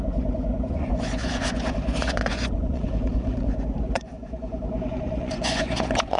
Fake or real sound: fake